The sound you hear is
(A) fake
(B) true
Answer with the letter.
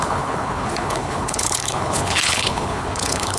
A